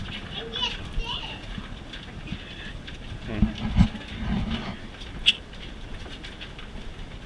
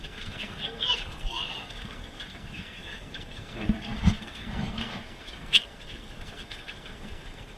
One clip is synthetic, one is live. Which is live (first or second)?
first